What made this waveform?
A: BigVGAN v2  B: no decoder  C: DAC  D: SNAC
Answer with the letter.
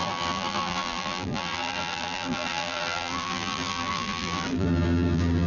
A